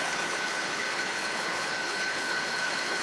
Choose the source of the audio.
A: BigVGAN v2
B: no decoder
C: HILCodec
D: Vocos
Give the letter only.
C